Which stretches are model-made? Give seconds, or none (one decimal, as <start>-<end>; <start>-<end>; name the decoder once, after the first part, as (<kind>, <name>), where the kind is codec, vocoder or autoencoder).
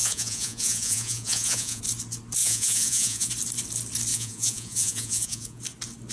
0.0-1.8 (vocoder, Vocos); 2.4-3.3; 4.1-5.6